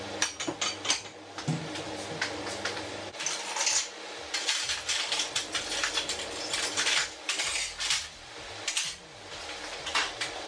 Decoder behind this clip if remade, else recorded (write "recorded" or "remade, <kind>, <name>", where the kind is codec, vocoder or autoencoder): recorded